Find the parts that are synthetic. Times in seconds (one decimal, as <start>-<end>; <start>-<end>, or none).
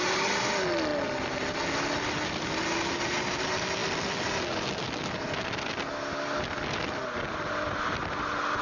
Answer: none